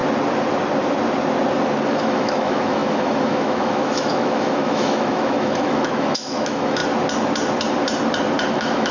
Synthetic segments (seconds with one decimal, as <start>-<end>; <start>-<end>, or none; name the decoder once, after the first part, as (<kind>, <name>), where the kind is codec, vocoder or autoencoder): 1.9-6.8 (autoencoder, DAC-VAE); 8.5-8.9